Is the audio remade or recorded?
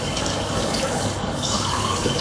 remade